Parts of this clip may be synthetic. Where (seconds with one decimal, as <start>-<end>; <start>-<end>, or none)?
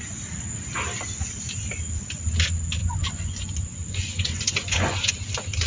2.8-5.1